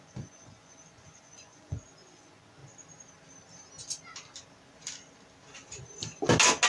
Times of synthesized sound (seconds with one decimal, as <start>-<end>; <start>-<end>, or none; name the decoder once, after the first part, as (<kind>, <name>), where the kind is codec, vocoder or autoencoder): 0.0-2.6 (vocoder, Vocos)